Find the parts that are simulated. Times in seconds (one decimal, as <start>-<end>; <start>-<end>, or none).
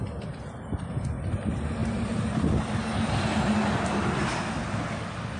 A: none